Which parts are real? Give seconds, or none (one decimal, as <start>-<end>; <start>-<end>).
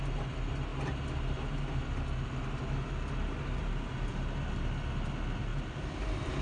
0.0-5.5